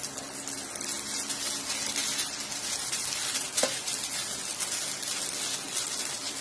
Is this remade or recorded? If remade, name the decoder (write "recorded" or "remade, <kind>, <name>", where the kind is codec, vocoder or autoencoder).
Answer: recorded